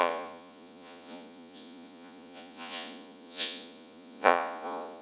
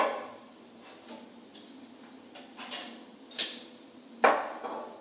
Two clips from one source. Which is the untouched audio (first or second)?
second